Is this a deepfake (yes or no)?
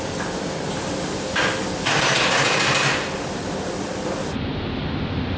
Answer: no